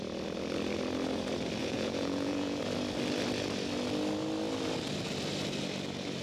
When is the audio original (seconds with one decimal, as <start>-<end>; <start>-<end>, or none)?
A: 0.0-1.6; 2.6-6.2